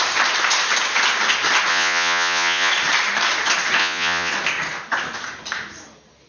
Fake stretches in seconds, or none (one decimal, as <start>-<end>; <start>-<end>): 1.7-2.7; 3.8-4.3

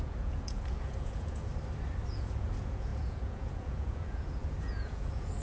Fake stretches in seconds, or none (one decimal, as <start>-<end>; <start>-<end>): 0.0-1.5; 2.1-5.4

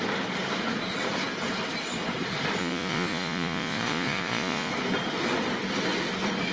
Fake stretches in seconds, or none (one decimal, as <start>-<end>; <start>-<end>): 2.6-4.7

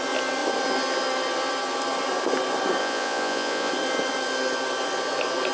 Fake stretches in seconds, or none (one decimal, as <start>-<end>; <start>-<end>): 2.8-3.7

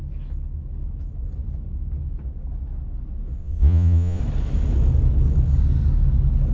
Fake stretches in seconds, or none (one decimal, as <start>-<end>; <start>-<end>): 3.4-4.2

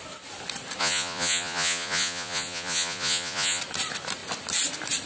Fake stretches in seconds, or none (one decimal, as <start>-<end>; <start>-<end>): 0.8-3.6